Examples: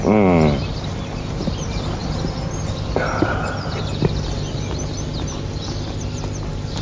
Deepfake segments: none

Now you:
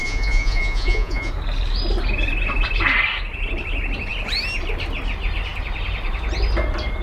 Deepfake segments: 0.0-1.3